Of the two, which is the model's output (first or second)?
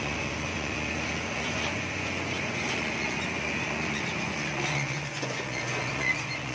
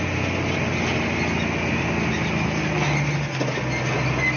first